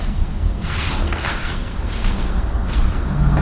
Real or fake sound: fake